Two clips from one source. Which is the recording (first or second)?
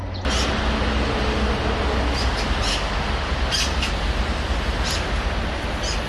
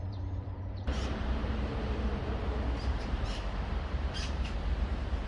first